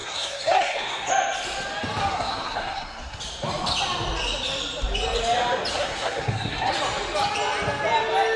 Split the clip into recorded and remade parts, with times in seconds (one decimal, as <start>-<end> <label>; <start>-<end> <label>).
0.0-1.1 remade; 1.1-2.1 recorded; 2.1-3.2 remade; 3.2-5.7 recorded; 5.7-6.7 remade; 6.7-8.4 recorded